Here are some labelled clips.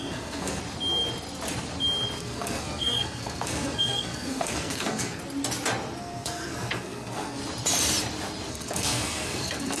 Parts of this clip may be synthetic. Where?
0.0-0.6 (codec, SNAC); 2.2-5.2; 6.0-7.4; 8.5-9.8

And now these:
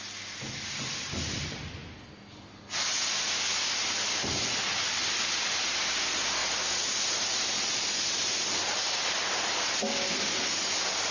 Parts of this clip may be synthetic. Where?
none

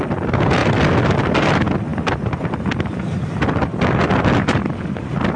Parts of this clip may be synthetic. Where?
none

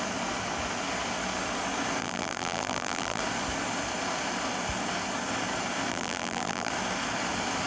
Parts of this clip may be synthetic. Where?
2.0-3.2 (vocoder, BigVGAN v2); 5.9-6.7

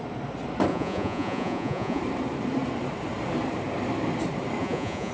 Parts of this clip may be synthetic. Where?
0.7-2.0 (vocoder, Vocos); 4.6-5.1